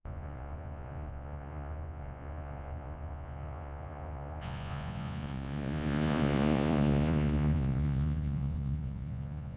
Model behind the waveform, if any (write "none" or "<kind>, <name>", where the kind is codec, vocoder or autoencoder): vocoder, Vocos